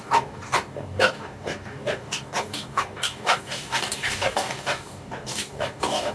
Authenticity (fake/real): fake